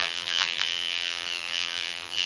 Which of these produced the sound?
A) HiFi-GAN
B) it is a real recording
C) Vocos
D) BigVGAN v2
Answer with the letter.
D